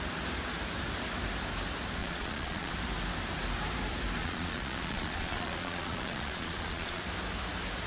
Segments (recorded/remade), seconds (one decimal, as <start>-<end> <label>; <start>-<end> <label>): 0.0-2.0 recorded; 2.0-2.7 remade; 2.7-4.2 recorded; 4.2-7.0 remade; 7.0-7.9 recorded